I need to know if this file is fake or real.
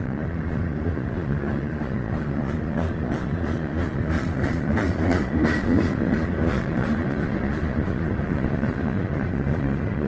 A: fake